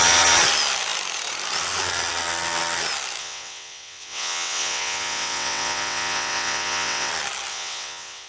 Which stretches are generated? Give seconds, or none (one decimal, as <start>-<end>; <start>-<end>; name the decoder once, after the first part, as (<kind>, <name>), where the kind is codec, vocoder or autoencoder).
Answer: 3.2-7.1 (vocoder, WaveNeXt); 7.5-8.3